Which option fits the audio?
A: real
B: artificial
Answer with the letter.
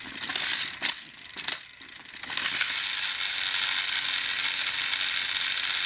A